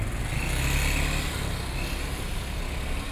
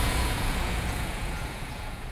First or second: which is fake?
second